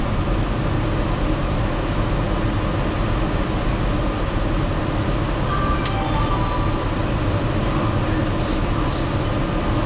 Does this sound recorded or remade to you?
recorded